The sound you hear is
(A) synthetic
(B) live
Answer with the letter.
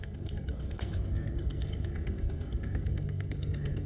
A